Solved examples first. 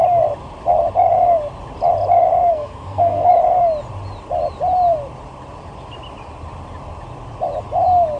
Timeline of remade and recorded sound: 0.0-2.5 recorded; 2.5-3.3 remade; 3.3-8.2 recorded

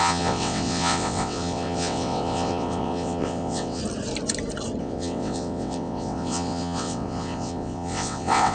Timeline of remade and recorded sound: 0.0-3.8 remade; 3.8-4.8 recorded; 4.8-8.5 remade

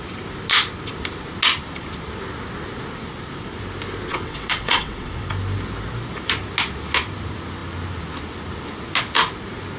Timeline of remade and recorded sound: 0.0-4.1 recorded; 4.1-5.3 remade; 5.3-9.8 recorded

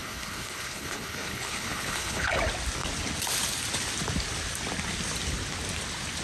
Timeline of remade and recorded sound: 0.0-2.4 remade; 2.4-6.2 recorded

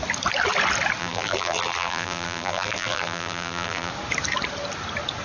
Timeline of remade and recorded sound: 0.0-1.0 recorded; 1.0-3.9 remade; 3.9-5.2 recorded

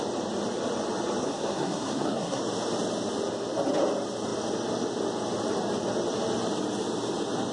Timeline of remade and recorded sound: 0.0-1.2 recorded; 1.2-2.4 remade; 2.4-7.5 recorded

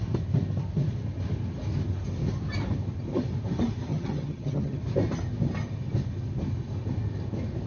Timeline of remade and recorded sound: 0.0-3.9 recorded; 3.9-4.8 remade; 4.8-7.7 recorded

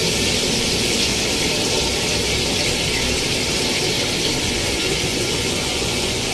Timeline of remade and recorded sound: 0.0-0.6 recorded; 0.6-1.1 remade; 1.1-4.4 recorded; 4.4-6.3 remade